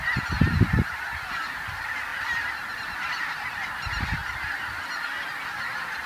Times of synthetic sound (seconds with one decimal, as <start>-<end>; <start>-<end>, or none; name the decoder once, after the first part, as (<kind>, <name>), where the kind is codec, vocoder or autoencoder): none

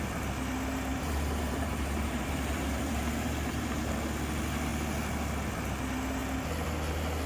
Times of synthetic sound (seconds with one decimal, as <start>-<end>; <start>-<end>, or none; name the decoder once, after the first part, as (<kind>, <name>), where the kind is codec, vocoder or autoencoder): 0.9-3.9 (vocoder, BigVGAN v2)

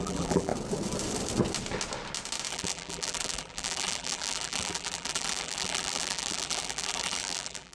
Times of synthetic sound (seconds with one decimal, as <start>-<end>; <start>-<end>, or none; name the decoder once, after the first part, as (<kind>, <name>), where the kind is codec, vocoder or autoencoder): 0.0-0.5 (vocoder, BigVGAN v2); 2.5-7.7

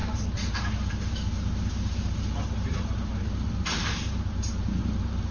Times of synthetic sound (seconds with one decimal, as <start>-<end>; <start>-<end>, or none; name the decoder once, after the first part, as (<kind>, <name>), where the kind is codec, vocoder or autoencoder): 0.0-5.3 (vocoder, BigVGAN v2)

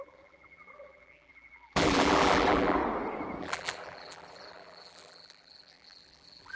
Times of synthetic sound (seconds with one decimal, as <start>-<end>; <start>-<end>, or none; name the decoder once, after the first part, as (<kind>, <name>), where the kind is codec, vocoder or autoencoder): 0.0-2.8 (vocoder, BigVGAN v2); 3.4-6.6

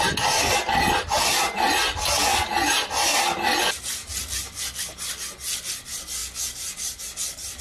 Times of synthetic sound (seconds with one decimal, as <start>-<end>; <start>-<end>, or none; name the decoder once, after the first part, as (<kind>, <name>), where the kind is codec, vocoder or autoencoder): none

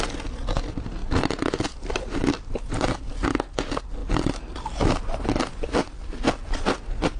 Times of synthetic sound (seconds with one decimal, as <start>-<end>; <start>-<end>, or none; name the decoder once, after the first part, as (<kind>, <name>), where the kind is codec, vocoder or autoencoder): 1.0-3.0 (vocoder, BigVGAN v2); 4.0-6.8